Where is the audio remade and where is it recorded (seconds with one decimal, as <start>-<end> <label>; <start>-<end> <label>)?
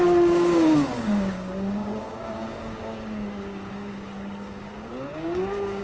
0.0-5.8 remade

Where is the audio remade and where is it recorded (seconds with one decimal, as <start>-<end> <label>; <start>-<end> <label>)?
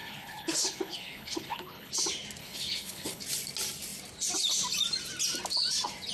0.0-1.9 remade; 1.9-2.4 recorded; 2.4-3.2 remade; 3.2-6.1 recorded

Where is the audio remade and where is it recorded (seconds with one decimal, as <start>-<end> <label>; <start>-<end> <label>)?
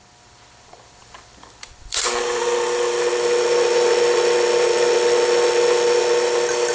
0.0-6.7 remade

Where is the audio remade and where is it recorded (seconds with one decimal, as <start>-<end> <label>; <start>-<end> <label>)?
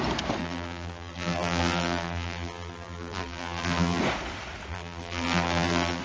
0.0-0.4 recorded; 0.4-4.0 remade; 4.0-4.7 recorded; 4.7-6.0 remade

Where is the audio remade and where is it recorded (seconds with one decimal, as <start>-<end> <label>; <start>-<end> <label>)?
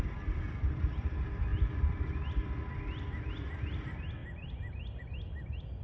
0.0-5.8 recorded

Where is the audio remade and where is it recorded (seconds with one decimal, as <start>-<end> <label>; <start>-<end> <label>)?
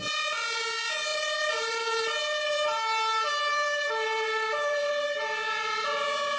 0.0-1.1 recorded; 1.1-4.9 remade; 4.9-6.4 recorded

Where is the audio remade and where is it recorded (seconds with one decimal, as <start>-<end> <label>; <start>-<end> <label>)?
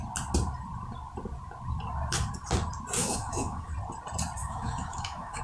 0.0-3.0 recorded; 3.0-3.7 remade; 3.7-4.4 recorded; 4.4-5.4 remade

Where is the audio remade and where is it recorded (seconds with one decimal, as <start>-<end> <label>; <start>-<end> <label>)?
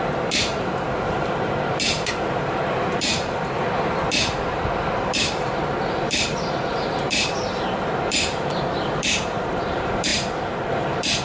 0.0-10.1 remade; 10.1-10.7 recorded; 10.7-11.2 remade